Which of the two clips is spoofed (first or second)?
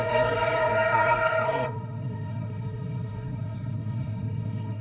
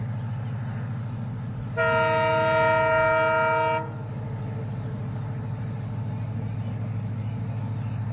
first